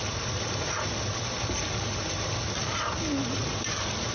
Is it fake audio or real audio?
real